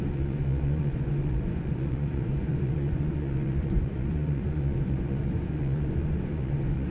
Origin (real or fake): fake